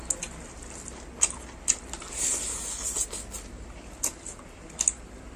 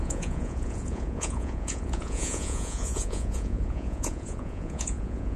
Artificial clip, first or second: second